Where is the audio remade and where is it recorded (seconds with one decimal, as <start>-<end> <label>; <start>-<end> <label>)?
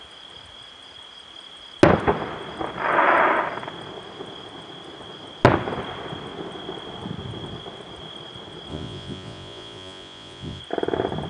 0.0-8.7 recorded; 8.7-10.6 remade; 10.6-11.3 recorded